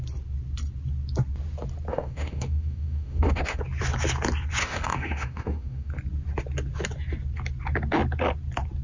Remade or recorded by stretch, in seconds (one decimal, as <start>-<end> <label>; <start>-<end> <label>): 0.0-1.9 recorded; 1.9-3.6 remade; 3.6-4.6 recorded; 4.6-5.9 remade; 5.9-8.8 recorded